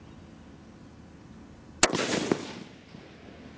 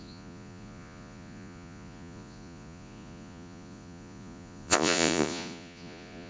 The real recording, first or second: first